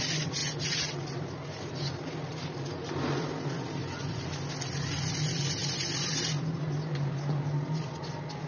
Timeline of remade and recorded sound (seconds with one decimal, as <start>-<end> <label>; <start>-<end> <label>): 0.0-3.8 recorded; 3.8-4.3 remade; 4.3-8.5 recorded